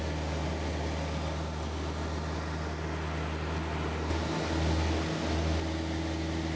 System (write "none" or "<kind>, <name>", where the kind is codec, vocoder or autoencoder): none